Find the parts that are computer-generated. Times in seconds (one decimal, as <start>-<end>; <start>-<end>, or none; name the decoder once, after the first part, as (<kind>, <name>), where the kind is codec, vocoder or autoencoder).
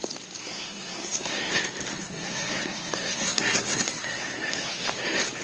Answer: 0.4-1.5 (codec, SNAC); 1.9-4.7